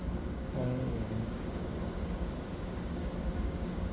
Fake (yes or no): yes